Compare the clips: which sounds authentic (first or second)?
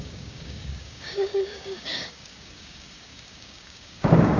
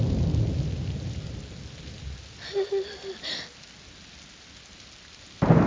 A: second